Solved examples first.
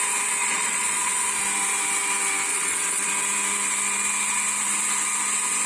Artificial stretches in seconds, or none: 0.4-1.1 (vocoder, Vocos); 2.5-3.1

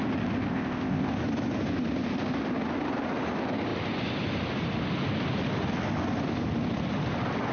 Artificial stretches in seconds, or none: 0.5-1.1 (codec, ZipCodec)

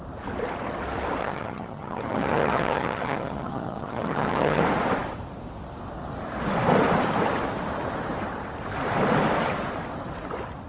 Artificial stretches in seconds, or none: 1.2-4.6 (vocoder, HiFi-GAN)